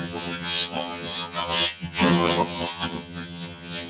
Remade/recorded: remade